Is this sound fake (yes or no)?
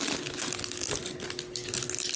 no